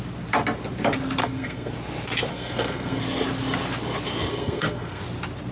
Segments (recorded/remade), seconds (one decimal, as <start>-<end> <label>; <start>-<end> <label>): 0.0-1.2 recorded; 1.2-1.7 remade; 1.7-2.3 recorded; 2.3-3.0 remade; 3.0-4.3 recorded; 4.3-5.0 remade; 5.0-5.5 recorded